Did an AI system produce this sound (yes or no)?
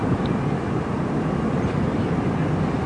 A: no